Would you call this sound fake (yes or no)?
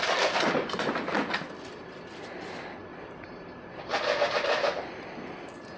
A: no